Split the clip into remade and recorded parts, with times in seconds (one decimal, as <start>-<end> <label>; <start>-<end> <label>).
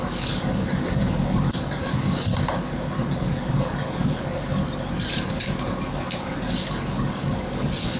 0.0-2.3 remade; 2.3-3.1 recorded; 3.1-4.6 remade; 4.6-5.3 recorded; 5.3-8.0 remade